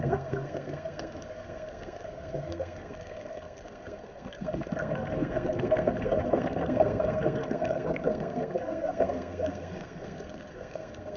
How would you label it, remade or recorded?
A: remade